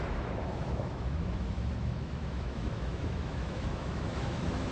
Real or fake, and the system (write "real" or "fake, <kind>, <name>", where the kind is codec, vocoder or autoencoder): fake, autoencoder, DAC-VAE